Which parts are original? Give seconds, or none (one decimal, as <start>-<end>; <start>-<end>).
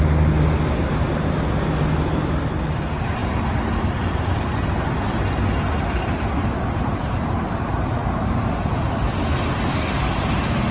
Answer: 0.0-10.7